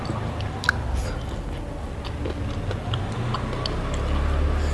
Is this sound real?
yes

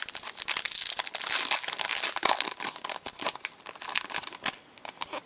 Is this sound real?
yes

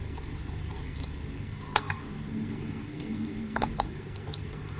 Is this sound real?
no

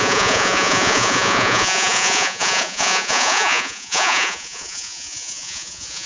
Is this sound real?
no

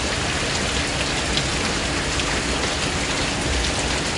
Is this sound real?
yes